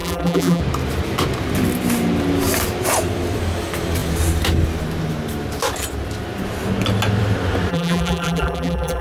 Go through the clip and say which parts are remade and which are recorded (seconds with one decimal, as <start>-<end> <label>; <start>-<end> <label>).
0.0-0.6 remade; 0.6-7.7 recorded; 7.7-9.0 remade